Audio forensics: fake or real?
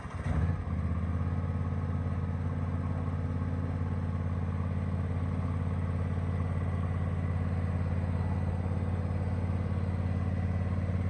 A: real